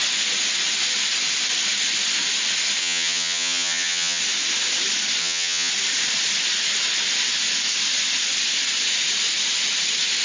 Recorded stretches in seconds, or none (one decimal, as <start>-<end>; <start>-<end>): 0.0-2.8; 4.2-5.2; 5.7-10.2